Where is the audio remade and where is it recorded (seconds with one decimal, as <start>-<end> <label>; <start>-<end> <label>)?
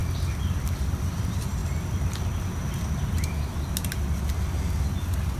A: 0.0-5.4 recorded